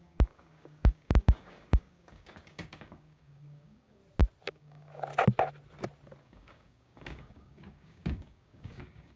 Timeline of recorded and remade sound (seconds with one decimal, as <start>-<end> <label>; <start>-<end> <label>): 0.0-4.0 remade; 4.0-4.5 recorded; 4.5-5.1 remade; 5.1-6.2 recorded; 6.2-9.2 remade